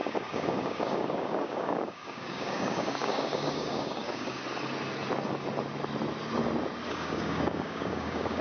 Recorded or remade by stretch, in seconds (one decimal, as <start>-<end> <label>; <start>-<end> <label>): 0.0-4.4 remade; 4.4-6.9 recorded; 6.9-8.4 remade